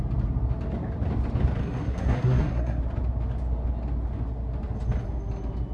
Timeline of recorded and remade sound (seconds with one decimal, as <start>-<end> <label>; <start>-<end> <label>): 0.0-1.6 recorded; 1.6-2.8 remade; 2.8-5.7 recorded